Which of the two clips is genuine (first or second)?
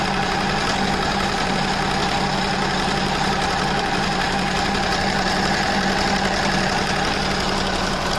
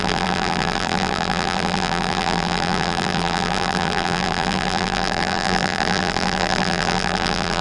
first